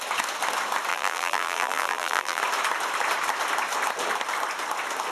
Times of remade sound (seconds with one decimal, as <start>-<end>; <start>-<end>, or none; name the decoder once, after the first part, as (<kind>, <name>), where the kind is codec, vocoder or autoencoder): 0.9-2.4 (vocoder, BigVGAN v2)